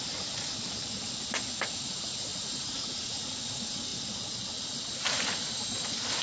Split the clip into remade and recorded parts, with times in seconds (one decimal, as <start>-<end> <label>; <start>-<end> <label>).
0.0-2.3 recorded; 2.3-3.5 remade; 3.5-6.2 recorded